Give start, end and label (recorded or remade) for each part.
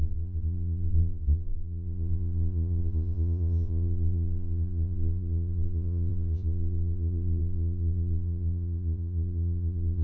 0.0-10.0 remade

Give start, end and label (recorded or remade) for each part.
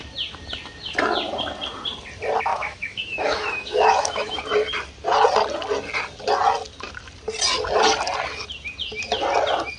0.0-2.5 recorded; 2.5-4.4 remade; 4.4-9.8 recorded